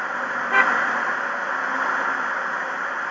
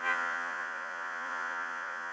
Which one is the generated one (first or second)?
second